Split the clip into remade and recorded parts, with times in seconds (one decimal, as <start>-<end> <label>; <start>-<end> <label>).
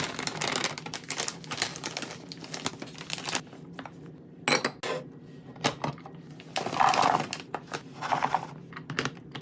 0.0-9.4 recorded